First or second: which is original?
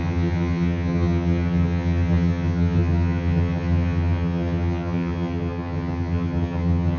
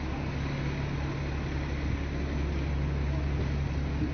second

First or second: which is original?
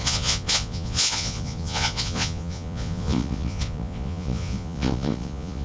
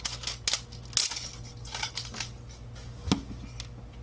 second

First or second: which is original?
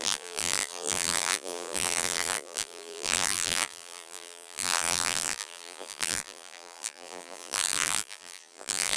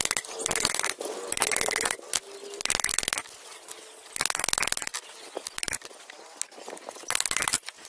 second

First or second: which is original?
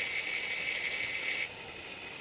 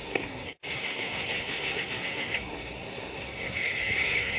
first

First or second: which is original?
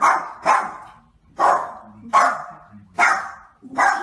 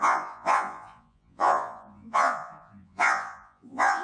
first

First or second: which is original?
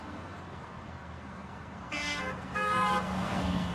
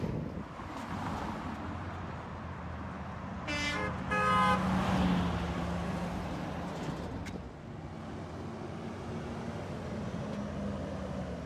second